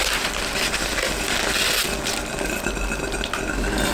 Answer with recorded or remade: recorded